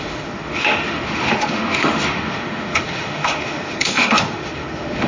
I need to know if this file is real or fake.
fake